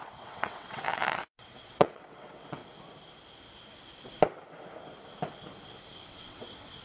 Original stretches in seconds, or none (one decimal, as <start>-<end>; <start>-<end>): 2.6-6.1